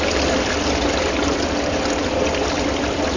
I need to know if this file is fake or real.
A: real